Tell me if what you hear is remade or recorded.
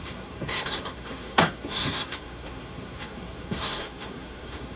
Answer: remade